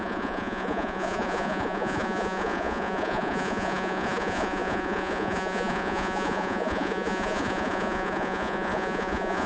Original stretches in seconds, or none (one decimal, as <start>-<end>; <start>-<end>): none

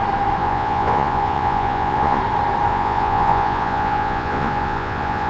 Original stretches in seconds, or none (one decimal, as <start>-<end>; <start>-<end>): 0.0-0.4; 2.2-2.7

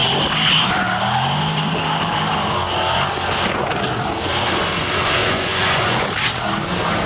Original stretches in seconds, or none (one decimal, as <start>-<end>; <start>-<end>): 0.0-5.2; 6.1-7.1